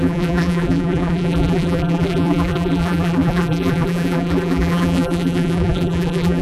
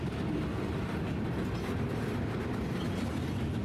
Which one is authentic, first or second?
second